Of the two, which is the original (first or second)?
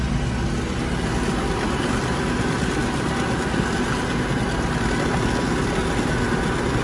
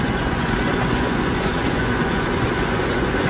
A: first